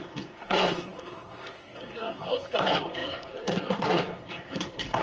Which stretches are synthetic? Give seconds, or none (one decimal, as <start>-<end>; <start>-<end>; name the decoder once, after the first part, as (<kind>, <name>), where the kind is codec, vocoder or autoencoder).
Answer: 0.0-5.0 (codec, SNAC)